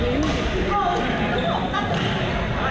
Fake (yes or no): no